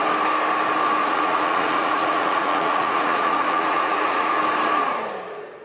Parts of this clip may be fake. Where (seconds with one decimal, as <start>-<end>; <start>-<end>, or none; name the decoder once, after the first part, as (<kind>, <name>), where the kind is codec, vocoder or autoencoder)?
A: 1.0-4.4 (vocoder, Vocos)

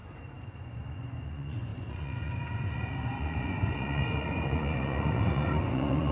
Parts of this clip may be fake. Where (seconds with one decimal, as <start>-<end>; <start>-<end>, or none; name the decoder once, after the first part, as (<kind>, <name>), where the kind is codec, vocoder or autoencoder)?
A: 0.5-6.1 (vocoder, Vocos)

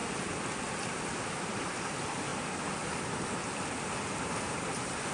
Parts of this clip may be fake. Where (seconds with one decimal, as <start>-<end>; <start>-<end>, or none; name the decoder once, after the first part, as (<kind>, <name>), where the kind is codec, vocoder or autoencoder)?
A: none

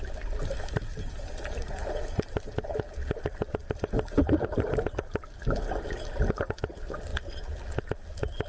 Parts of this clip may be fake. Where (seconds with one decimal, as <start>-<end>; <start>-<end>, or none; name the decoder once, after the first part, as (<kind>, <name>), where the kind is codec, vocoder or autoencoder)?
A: none